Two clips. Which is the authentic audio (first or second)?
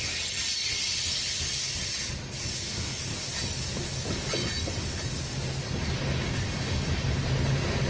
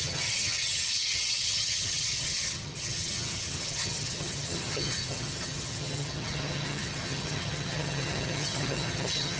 first